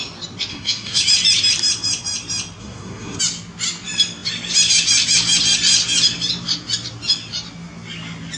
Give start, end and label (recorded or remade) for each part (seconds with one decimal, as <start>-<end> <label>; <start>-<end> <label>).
0.0-0.5 recorded; 0.5-1.0 remade; 1.0-2.6 recorded; 2.6-3.2 remade; 3.2-8.4 recorded